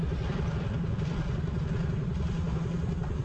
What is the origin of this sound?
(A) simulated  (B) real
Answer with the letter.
B